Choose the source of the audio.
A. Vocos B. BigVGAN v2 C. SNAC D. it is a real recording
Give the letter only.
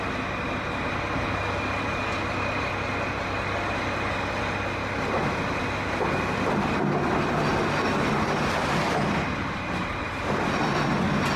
D